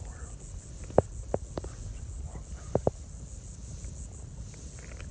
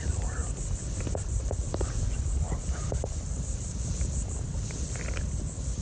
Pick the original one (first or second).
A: first